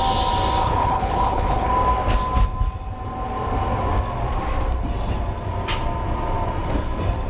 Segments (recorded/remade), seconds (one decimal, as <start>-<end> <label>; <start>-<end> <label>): 0.0-0.6 recorded; 0.6-1.7 remade; 1.7-7.3 recorded